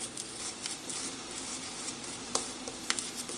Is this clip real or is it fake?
real